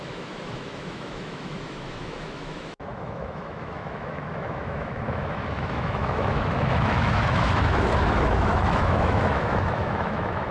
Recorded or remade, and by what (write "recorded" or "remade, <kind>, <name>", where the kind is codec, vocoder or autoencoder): remade, autoencoder, DAC-VAE